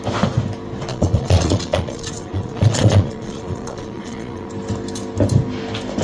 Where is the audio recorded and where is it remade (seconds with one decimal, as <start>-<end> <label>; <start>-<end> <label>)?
0.0-0.9 recorded; 0.9-4.5 remade; 4.5-6.0 recorded